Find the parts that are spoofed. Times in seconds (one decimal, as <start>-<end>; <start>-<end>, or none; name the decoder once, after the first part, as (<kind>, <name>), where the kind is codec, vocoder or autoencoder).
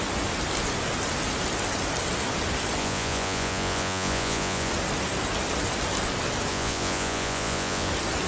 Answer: 2.8-4.7 (vocoder, Vocos); 6.5-7.9